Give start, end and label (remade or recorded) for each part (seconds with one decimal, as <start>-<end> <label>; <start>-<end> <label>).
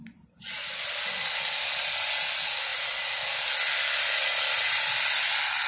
0.0-5.7 recorded